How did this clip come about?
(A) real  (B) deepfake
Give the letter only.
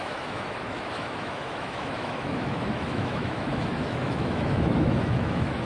B